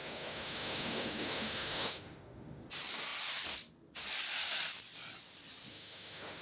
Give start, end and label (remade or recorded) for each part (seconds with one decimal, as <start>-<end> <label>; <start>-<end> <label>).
0.0-2.6 remade; 2.6-5.7 recorded; 5.7-6.4 remade